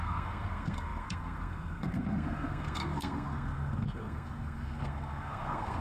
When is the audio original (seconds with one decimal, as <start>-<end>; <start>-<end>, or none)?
none